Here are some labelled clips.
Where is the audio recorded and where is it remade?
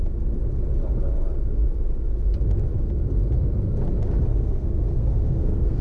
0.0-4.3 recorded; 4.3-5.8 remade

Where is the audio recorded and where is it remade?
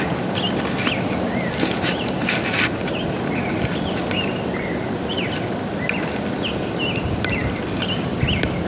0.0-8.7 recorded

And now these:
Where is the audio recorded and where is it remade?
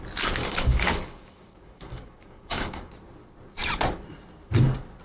0.0-0.4 recorded; 0.4-2.9 remade; 2.9-5.0 recorded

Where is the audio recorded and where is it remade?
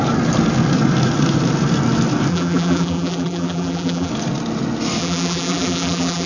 0.0-2.3 recorded; 2.3-4.1 remade; 4.1-5.0 recorded; 5.0-6.3 remade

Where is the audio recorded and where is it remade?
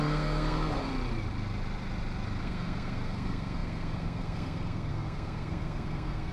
0.0-0.9 remade; 0.9-2.4 recorded; 2.4-6.3 remade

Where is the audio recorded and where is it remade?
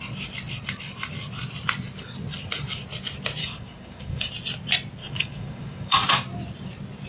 0.0-3.4 recorded; 3.4-4.3 remade; 4.3-5.0 recorded; 5.0-6.1 remade; 6.1-7.1 recorded